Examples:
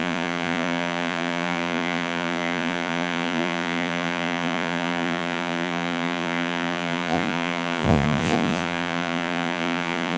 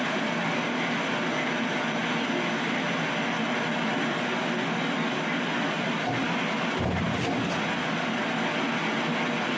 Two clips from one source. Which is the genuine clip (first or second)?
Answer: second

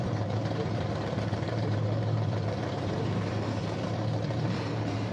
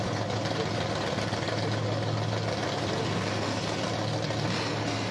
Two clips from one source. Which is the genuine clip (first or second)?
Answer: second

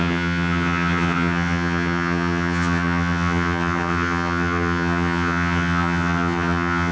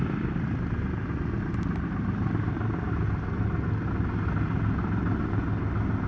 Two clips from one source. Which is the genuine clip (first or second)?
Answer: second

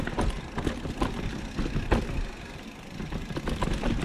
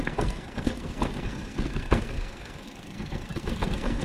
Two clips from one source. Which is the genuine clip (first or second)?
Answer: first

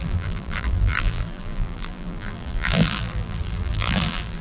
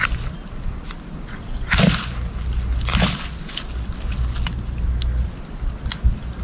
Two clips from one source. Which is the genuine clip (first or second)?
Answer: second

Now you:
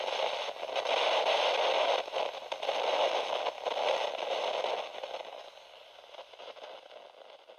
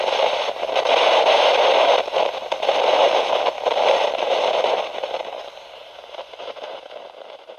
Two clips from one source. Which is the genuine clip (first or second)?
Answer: first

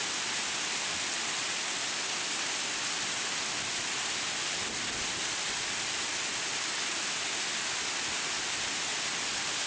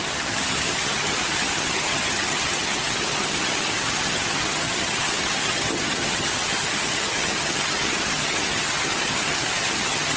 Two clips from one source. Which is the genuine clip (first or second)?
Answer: first